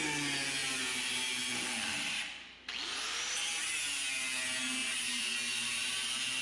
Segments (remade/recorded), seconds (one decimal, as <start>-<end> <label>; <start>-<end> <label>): 0.0-4.8 recorded; 4.8-5.9 remade; 5.9-6.4 recorded